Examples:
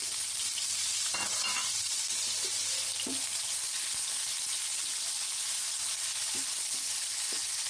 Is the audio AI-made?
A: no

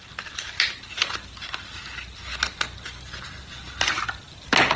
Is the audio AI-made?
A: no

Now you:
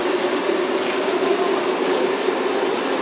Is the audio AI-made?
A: yes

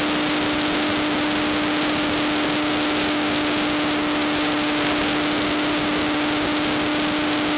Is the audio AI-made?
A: no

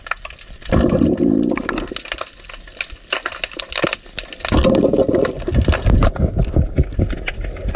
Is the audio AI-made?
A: no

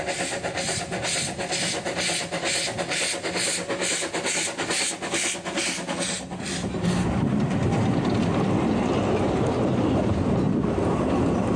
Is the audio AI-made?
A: no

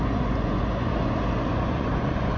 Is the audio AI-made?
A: yes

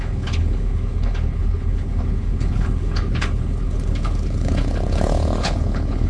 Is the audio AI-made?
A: yes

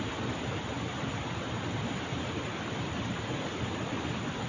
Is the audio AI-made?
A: no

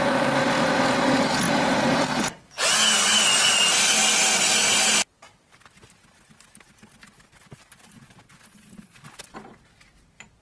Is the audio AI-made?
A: no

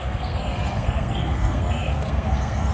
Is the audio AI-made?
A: yes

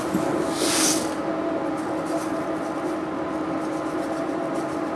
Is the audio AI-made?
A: no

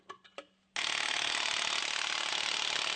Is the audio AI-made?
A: no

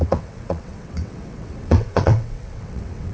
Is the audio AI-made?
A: yes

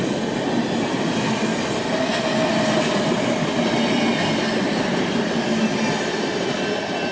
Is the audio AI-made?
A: no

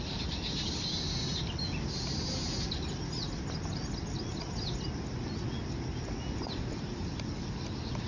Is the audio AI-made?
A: no